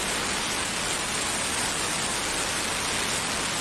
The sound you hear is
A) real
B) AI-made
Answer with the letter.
A